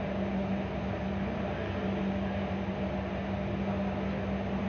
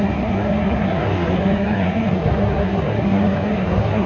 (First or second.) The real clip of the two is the first